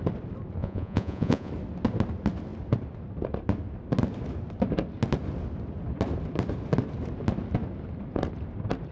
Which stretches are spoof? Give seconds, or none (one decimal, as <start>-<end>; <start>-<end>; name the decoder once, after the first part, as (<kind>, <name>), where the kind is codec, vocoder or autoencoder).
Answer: 0.6-1.5 (vocoder, Vocos)